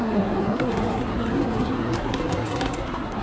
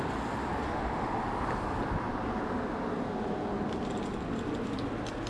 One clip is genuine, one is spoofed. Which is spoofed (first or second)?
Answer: first